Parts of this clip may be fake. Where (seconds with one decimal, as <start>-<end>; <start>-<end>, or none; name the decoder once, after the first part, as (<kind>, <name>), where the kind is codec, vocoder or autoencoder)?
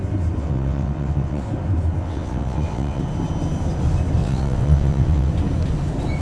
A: 0.4-1.4 (vocoder, WaveNeXt); 2.0-3.0; 4.2-5.3